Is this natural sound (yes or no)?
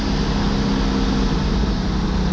yes